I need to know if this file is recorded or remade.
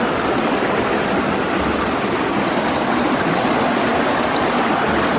recorded